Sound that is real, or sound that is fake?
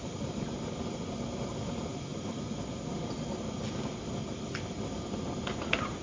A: real